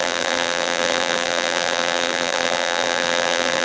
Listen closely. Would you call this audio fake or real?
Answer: fake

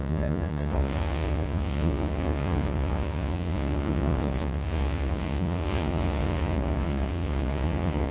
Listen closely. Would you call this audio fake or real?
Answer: fake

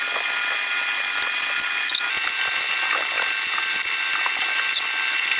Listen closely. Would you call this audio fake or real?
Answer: real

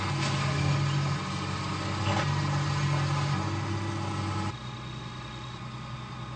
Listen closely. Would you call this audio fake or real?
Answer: real